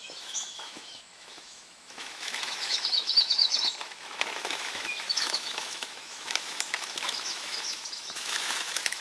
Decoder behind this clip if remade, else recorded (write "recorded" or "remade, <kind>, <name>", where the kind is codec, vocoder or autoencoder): remade, autoencoder, DAC-VAE